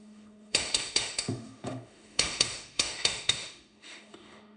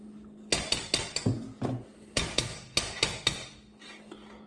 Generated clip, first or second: first